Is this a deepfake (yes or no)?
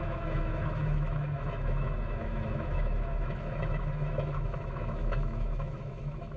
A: yes